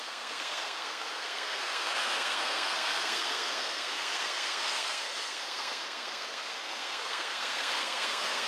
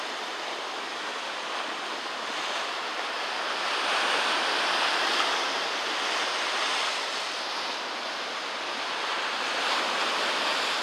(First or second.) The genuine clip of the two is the second